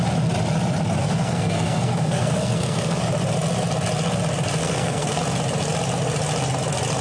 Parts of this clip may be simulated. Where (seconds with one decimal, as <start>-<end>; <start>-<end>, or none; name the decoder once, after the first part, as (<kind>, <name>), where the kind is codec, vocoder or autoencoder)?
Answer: 1.0-3.0 (codec, SNAC); 4.6-5.2